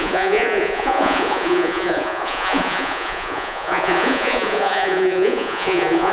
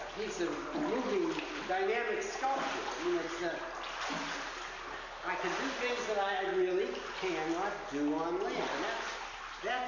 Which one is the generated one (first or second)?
first